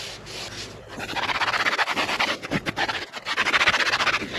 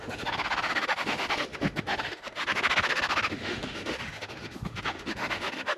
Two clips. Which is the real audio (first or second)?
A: first